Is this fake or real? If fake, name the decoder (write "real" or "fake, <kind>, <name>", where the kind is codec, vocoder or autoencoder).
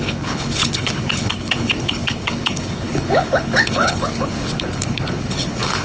fake, codec, HILCodec